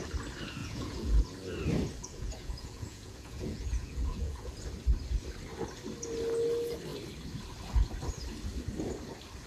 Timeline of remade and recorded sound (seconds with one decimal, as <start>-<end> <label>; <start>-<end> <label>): 0.0-0.6 recorded; 0.6-1.2 remade; 1.2-2.0 recorded; 2.0-4.5 remade; 4.5-9.5 recorded